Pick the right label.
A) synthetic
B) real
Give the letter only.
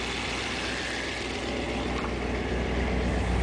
B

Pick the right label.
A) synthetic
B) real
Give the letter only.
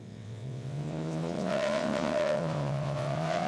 A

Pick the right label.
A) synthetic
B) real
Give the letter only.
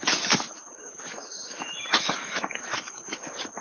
A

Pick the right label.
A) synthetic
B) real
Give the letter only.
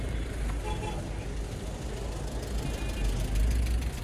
B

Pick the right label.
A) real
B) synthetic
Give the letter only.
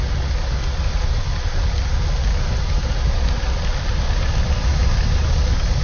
A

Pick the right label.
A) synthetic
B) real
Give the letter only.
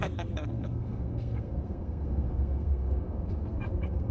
A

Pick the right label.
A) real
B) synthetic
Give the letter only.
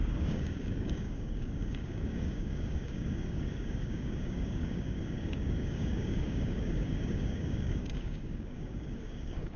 B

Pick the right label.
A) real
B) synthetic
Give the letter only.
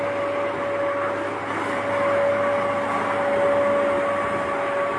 A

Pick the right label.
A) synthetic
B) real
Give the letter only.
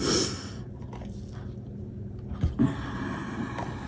B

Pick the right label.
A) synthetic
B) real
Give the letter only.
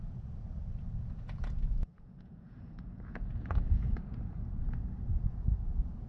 A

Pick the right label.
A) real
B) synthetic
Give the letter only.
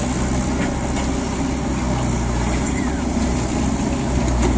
A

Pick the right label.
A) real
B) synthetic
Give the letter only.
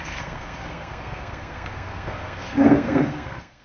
B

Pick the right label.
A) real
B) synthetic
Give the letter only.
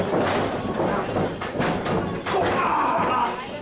A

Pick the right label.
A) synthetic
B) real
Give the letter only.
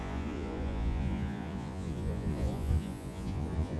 A